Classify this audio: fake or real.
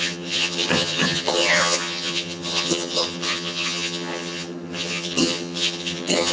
fake